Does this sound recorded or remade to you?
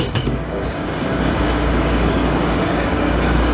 remade